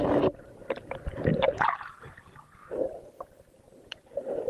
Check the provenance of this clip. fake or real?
real